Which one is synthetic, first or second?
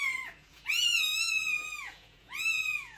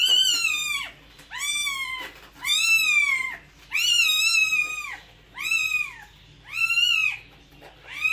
first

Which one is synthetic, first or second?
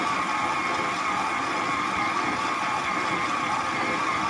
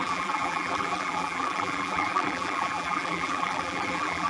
second